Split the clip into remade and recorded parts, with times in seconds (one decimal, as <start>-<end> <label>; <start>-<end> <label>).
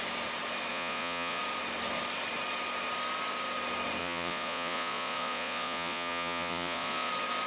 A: 0.0-0.7 recorded; 0.7-1.4 remade; 1.4-4.0 recorded; 4.0-7.1 remade; 7.1-7.5 recorded